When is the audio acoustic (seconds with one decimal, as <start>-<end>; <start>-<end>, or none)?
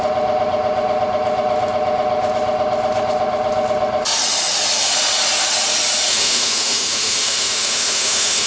0.0-6.1